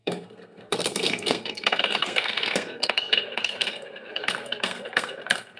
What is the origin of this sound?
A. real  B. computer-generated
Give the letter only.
B